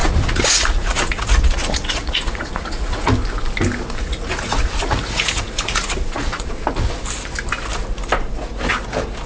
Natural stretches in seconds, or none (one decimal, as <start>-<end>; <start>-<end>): 3.1-4.0; 6.5-9.3